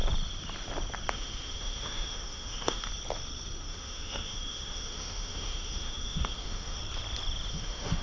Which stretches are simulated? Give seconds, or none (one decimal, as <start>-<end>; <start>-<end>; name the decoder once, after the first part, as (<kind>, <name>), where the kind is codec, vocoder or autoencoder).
1.1-2.9 (autoencoder, DAC-VAE); 3.7-6.8; 7.5-8.0